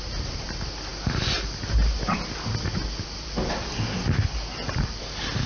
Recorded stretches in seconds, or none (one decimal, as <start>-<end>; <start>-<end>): 0.0-5.5

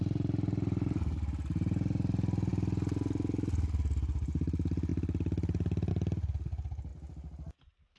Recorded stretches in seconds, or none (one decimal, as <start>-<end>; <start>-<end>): 0.0-8.0

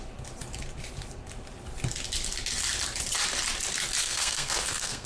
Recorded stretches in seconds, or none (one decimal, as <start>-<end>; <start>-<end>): 0.0-4.0

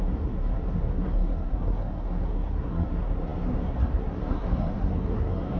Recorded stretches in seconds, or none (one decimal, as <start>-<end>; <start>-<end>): none

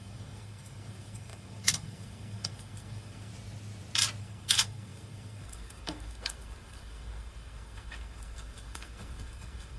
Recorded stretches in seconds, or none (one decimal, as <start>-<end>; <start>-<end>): 3.3-4.2